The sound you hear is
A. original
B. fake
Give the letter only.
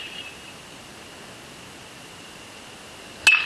A